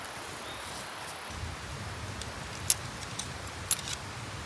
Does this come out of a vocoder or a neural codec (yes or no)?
no